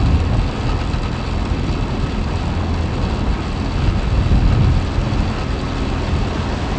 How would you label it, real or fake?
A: real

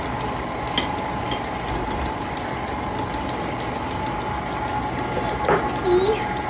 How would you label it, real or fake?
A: real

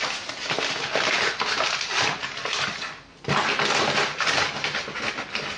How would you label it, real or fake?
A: real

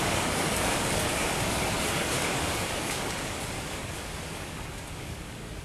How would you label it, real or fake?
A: fake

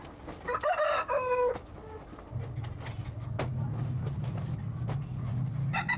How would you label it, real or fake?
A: real